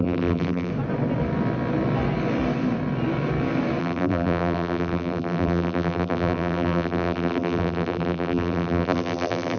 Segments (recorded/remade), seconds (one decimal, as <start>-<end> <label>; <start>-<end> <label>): 0.0-0.7 remade; 0.7-3.8 recorded; 3.8-9.6 remade